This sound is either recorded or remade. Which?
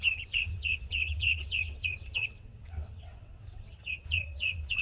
remade